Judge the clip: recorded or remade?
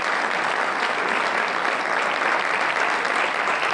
recorded